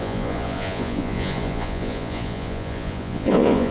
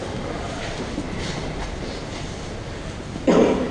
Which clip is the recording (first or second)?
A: second